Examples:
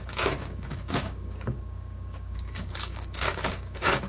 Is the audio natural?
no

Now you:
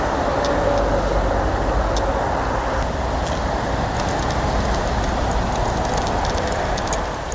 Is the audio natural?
yes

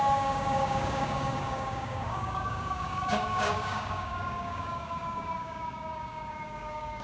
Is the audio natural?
no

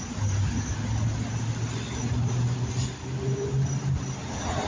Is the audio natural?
yes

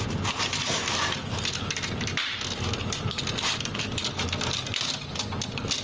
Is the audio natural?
yes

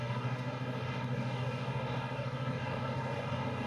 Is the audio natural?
no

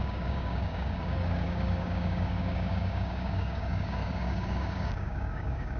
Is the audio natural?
no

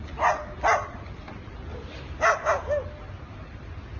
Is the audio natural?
yes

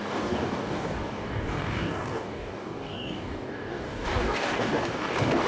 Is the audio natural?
no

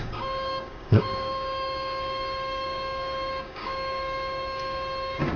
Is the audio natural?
no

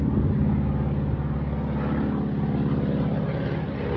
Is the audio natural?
yes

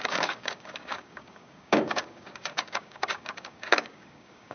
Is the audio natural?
no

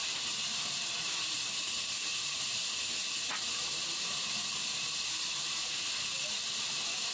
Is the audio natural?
yes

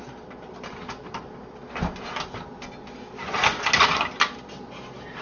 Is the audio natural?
yes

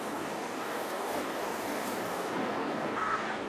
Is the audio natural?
no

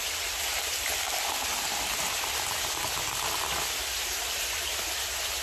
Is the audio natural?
yes